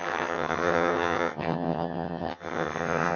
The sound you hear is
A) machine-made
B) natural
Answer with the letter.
A